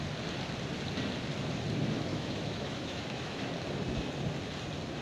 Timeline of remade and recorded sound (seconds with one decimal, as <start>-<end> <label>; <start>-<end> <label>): 0.0-2.1 recorded; 2.1-3.5 remade; 3.5-5.0 recorded